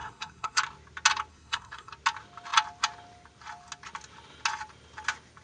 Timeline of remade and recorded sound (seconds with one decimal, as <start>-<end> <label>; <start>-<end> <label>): 0.0-0.6 remade; 0.6-1.3 recorded; 1.3-1.9 remade; 1.9-5.4 recorded